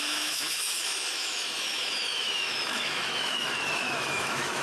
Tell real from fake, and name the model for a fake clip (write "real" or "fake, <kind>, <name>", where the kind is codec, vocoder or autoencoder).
fake, autoencoder, DAC-VAE